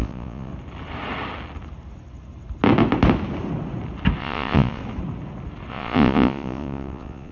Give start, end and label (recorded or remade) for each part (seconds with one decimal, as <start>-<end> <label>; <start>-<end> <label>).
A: 0.0-0.5 remade; 0.5-4.2 recorded; 4.2-4.8 remade; 4.8-5.7 recorded; 5.7-7.3 remade